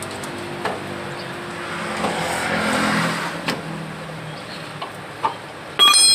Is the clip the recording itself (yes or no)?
yes